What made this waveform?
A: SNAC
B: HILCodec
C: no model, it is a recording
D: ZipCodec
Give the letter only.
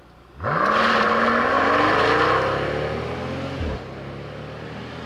C